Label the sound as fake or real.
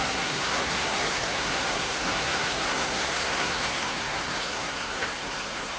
fake